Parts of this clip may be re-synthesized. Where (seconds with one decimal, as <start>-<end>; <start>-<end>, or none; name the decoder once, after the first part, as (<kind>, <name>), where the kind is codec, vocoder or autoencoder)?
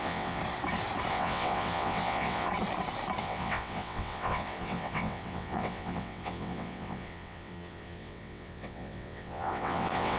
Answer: 0.0-0.4 (vocoder, WaveNeXt); 1.1-2.5; 3.2-10.2